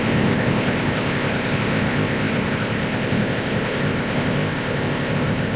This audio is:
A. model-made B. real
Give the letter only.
A